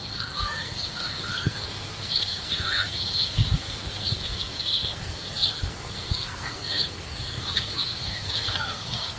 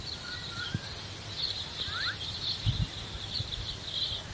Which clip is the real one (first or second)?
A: second